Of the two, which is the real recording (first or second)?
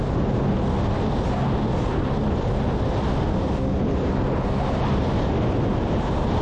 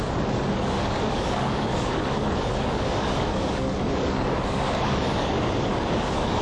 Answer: first